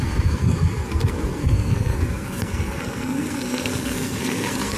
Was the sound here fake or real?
fake